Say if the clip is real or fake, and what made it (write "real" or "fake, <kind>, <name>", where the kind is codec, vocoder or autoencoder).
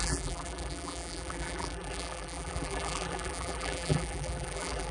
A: fake, vocoder, BigVGAN v2